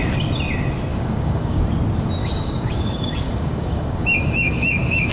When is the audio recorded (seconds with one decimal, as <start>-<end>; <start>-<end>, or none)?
0.0-0.9; 1.6-2.2

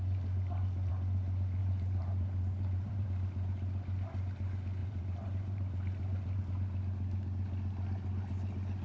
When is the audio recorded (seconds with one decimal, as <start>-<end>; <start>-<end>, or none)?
0.0-1.6; 3.1-4.8; 6.4-8.8

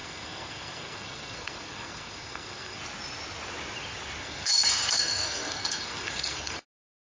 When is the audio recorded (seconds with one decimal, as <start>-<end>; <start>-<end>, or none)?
2.8-4.2; 6.6-7.2

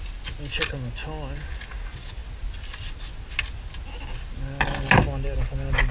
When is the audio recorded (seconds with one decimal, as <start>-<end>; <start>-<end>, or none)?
0.0-5.9